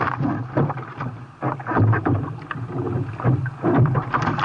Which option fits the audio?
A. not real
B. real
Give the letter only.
B